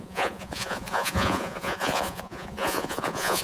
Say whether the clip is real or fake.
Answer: fake